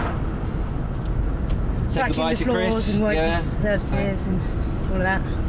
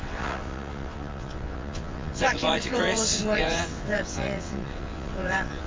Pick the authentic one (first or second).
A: first